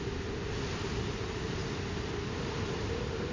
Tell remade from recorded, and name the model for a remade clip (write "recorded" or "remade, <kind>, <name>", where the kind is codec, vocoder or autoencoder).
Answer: recorded